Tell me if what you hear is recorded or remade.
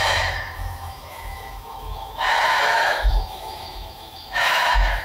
remade